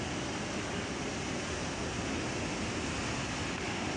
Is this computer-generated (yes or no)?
no